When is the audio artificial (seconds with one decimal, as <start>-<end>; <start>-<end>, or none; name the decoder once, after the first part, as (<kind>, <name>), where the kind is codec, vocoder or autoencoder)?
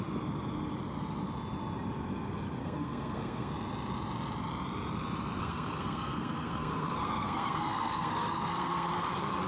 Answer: 2.6-3.5 (codec, SNAC); 5.4-8.9